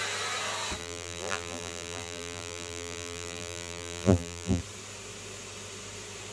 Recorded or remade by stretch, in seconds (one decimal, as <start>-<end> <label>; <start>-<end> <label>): 0.0-0.8 recorded; 0.8-4.6 remade; 4.6-6.3 recorded